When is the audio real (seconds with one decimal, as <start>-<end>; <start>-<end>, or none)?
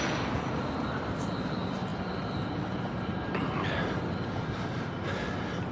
0.0-5.7